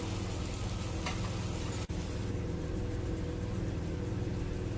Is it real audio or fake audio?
real